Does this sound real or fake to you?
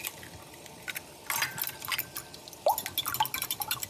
real